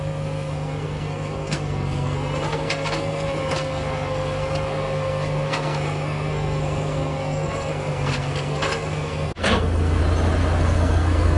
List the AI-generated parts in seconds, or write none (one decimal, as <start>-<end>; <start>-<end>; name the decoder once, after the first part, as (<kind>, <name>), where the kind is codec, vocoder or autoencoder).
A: 0.0-10.0 (codec, SNAC); 10.6-11.4